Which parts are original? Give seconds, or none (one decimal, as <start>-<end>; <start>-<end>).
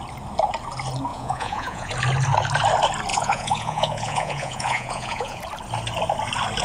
0.0-1.1; 1.9-3.1; 5.4-6.6